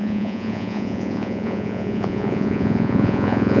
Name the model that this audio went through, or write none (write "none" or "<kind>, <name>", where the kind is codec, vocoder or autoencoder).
vocoder, Vocos